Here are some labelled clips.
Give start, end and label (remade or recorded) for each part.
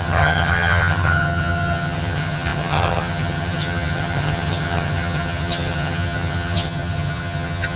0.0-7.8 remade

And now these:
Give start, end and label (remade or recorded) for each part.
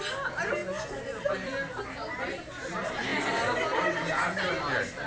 0.0-5.1 recorded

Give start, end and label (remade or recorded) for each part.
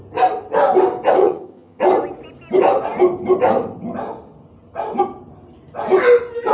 0.0-1.2 recorded; 1.2-1.8 remade; 1.8-6.5 recorded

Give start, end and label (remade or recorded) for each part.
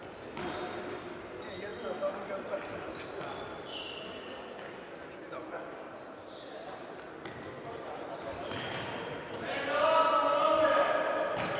0.0-11.6 recorded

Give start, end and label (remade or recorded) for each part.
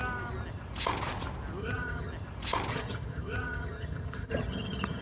0.0-1.6 recorded; 1.6-2.1 remade; 2.1-2.7 recorded; 2.7-5.0 remade